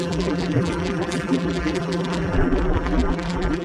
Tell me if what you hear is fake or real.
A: fake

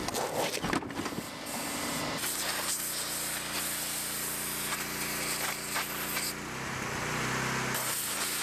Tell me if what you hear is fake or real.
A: real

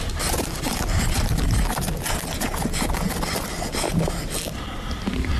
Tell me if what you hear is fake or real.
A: real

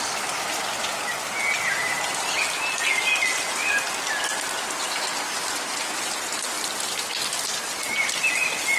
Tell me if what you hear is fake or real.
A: real